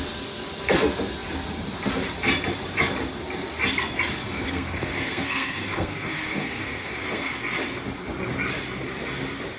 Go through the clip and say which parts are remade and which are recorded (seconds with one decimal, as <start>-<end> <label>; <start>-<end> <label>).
0.0-4.2 recorded; 4.2-7.3 remade; 7.3-9.6 recorded